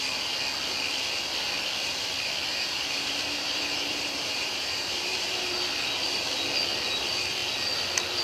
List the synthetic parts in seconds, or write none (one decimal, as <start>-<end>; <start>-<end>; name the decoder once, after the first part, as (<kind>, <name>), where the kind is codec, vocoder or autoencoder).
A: 2.5-5.6 (vocoder, BigVGAN v2)